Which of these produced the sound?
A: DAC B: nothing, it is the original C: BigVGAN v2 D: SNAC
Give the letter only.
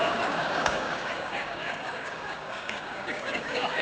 A